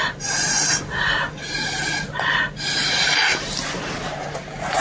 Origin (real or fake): real